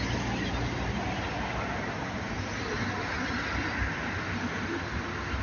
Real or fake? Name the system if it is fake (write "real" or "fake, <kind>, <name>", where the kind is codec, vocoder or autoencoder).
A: real